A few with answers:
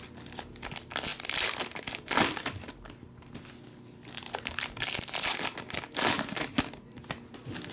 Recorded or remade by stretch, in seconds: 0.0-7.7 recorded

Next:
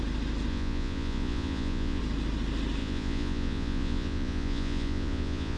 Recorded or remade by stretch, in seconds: 0.0-0.5 recorded; 0.5-2.0 remade; 2.0-2.8 recorded; 2.8-5.6 remade

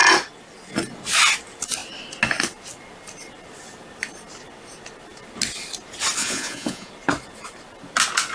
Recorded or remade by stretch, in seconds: 0.0-6.2 recorded; 6.2-6.9 remade; 6.9-8.3 recorded

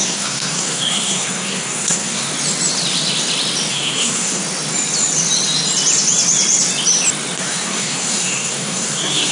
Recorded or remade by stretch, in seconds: 0.0-2.3 remade; 2.3-3.7 recorded; 3.7-4.4 remade; 4.4-7.4 recorded; 7.4-9.3 remade

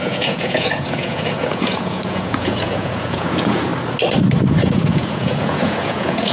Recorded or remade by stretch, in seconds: 0.0-3.7 remade; 3.7-4.6 recorded; 4.6-6.3 remade

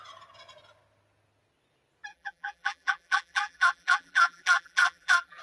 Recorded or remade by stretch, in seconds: 0.0-2.1 recorded; 2.1-5.4 remade